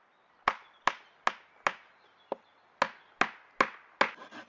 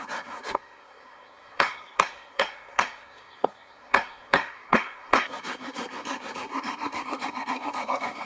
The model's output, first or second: second